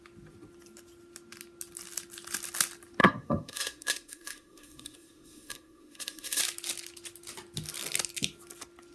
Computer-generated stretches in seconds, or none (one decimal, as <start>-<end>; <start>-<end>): 3.0-6.4